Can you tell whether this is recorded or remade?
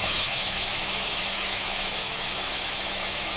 remade